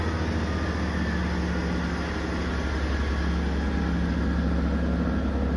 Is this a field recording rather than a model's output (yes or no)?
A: yes